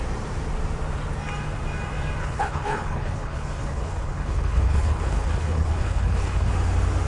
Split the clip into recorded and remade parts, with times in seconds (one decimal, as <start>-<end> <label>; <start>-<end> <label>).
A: 0.0-2.2 recorded; 2.2-6.5 remade; 6.5-7.1 recorded

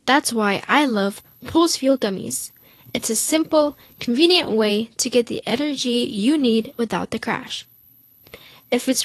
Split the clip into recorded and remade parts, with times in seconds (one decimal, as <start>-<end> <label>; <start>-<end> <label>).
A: 0.0-0.9 recorded; 0.9-4.7 remade; 4.7-5.5 recorded; 5.5-6.8 remade; 6.8-7.4 recorded; 7.4-9.0 remade

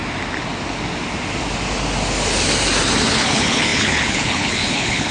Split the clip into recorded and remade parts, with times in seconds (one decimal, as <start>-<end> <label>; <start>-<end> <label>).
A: 0.0-3.1 recorded; 3.1-5.1 remade